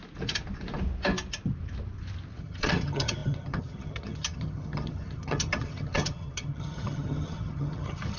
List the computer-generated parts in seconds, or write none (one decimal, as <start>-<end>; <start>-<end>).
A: 2.4-8.2